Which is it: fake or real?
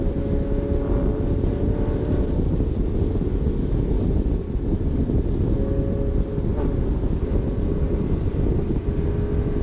real